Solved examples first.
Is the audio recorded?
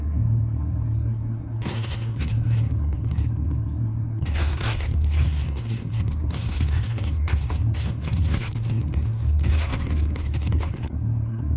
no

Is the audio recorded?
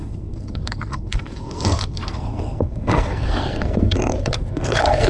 no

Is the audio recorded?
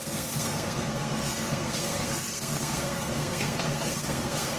no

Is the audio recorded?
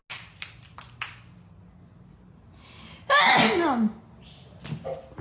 yes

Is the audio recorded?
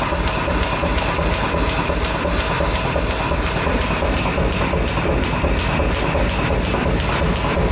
yes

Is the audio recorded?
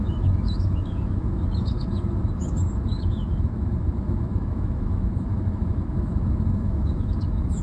no